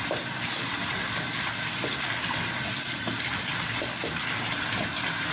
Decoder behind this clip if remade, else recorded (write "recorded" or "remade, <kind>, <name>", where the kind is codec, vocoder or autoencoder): recorded